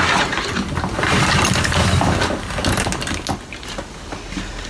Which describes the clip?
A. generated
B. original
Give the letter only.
B